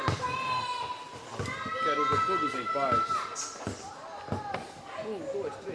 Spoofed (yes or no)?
no